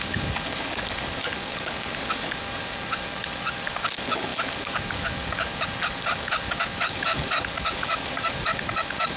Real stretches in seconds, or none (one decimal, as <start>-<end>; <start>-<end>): none